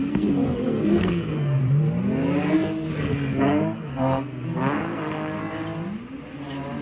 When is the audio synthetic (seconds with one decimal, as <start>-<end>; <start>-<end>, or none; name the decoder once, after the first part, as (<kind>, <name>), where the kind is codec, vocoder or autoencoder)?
0.0-1.6 (codec, SNAC); 2.9-5.4

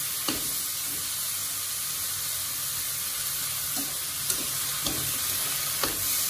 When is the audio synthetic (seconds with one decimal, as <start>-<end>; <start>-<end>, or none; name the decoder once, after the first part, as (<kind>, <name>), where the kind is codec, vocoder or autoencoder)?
none